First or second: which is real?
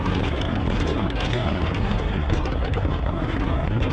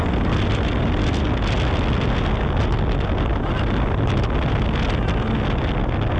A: second